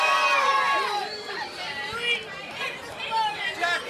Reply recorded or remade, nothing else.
recorded